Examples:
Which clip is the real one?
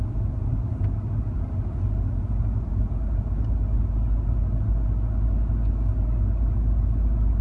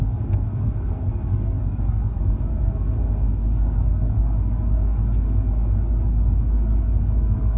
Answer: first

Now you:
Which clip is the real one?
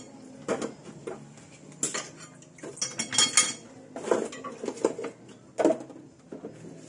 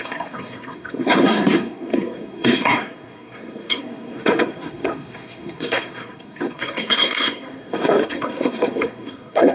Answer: first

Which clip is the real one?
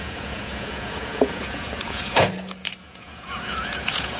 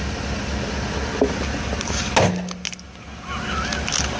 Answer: second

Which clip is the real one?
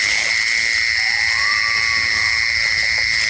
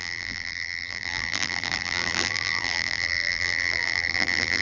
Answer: first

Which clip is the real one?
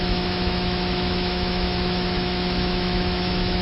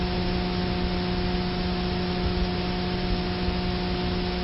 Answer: second